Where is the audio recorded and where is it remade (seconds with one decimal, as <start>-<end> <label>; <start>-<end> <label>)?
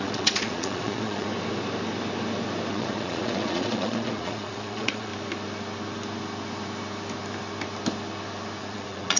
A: 0.0-1.3 remade; 1.3-2.7 recorded; 2.7-5.1 remade; 5.1-8.6 recorded; 8.6-9.2 remade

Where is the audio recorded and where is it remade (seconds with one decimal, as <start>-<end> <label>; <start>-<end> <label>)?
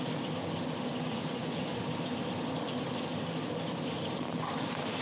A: 0.0-0.9 recorded; 0.9-1.8 remade; 1.8-5.0 recorded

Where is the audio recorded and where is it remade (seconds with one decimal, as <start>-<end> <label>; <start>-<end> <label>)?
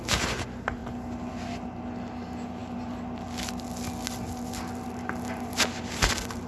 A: 0.0-6.5 recorded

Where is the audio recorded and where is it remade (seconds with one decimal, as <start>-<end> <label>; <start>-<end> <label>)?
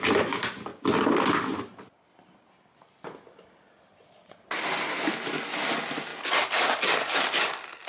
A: 0.0-3.9 recorded; 3.9-4.6 remade; 4.6-7.9 recorded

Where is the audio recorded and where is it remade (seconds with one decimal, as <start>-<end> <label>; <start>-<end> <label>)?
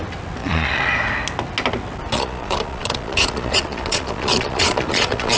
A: 0.0-0.4 recorded; 0.4-0.9 remade; 0.9-2.1 recorded; 2.1-5.4 remade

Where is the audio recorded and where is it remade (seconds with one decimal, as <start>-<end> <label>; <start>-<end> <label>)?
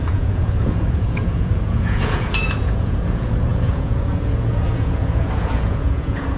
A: 0.0-6.4 remade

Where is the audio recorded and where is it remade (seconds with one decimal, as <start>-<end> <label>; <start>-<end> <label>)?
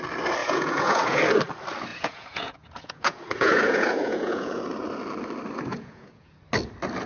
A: 0.0-0.4 recorded; 0.4-1.2 remade; 1.2-1.9 recorded; 1.9-4.6 remade; 4.6-5.7 recorded; 5.7-6.4 remade; 6.4-7.1 recorded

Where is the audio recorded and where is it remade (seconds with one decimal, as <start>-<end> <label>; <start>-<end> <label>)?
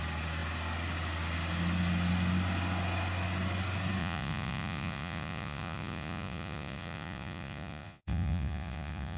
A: 0.0-4.0 recorded; 4.0-9.2 remade